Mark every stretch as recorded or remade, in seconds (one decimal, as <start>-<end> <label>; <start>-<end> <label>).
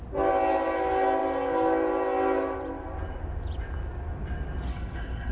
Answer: 0.0-4.7 recorded; 4.7-5.3 remade